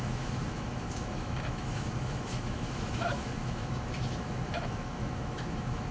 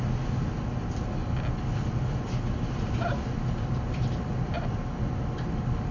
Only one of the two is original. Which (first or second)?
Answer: second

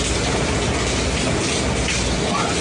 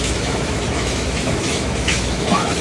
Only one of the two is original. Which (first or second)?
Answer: first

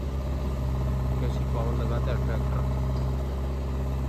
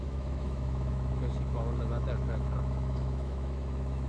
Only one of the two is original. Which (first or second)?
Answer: first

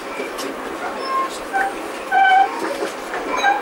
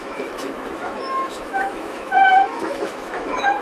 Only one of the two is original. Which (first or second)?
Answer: first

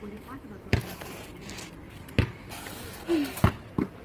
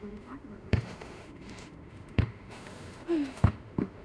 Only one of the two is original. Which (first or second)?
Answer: first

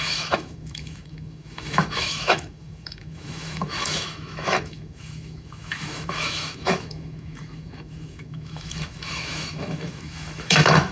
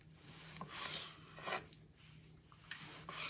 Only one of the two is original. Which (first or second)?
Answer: second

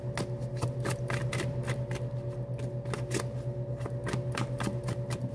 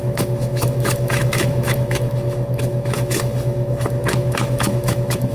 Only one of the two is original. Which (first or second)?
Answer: first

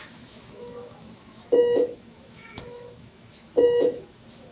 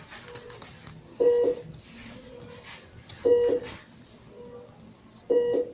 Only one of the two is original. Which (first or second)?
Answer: second